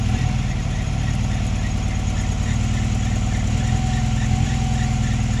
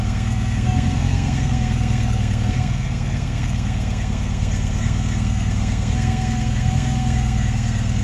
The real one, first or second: first